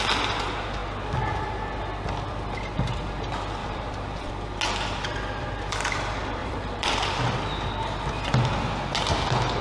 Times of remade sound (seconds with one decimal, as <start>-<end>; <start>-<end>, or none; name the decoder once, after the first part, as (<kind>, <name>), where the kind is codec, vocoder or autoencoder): 3.6-4.3 (vocoder, BigVGAN v2); 6.4-7.2